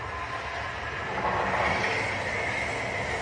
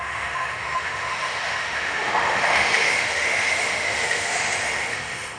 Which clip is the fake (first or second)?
second